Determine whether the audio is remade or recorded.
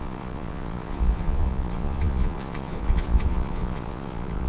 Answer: remade